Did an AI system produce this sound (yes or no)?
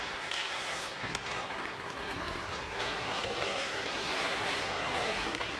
yes